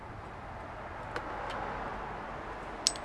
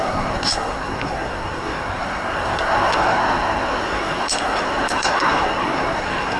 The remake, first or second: second